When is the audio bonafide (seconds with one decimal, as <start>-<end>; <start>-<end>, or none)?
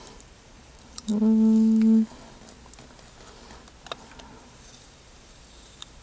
1.1-4.4